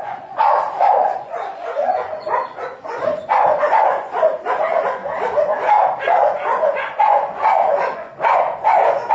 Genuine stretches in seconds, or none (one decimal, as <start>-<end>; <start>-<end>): 5.0-6.0